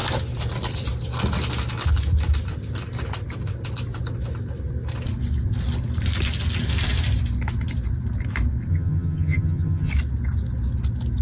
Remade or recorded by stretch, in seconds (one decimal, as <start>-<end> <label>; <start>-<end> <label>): 0.0-8.7 recorded; 8.7-9.9 remade; 9.9-11.2 recorded